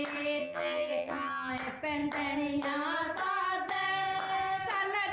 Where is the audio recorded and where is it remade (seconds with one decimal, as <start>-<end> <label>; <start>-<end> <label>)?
0.0-0.4 recorded; 0.4-1.5 remade; 1.5-5.1 recorded